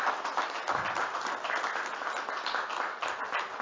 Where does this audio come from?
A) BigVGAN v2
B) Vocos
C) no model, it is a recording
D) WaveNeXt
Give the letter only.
C